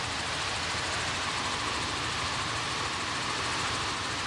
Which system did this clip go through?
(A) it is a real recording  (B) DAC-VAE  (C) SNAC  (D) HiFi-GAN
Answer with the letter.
A